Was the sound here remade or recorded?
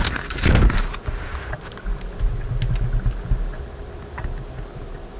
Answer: recorded